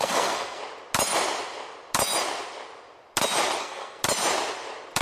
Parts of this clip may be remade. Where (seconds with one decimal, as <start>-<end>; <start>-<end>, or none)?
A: 0.0-0.6; 3.6-4.0

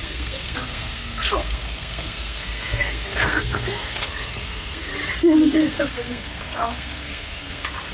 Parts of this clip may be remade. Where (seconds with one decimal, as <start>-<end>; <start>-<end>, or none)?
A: 0.0-4.9; 5.6-7.9

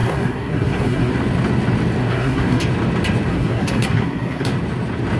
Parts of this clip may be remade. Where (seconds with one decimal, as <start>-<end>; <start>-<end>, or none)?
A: 0.0-1.1; 2.0-2.6; 3.3-4.5

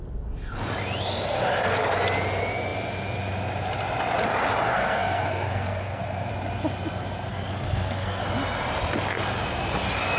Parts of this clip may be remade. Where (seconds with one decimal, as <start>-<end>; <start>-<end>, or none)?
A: 4.7-6.3; 7.3-8.2